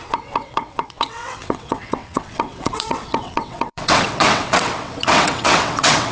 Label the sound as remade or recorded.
remade